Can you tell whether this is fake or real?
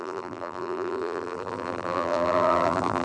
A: fake